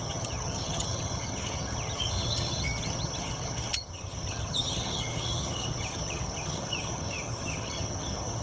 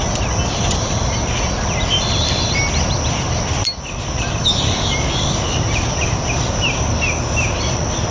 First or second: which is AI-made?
first